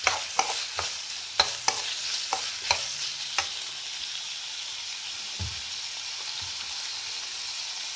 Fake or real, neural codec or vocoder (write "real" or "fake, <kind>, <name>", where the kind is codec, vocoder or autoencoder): real